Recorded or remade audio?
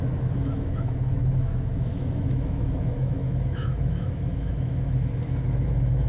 remade